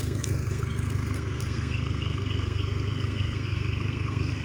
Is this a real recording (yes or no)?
no